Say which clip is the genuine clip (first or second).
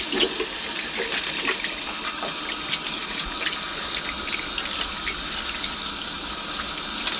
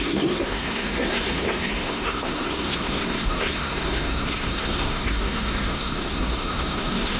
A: first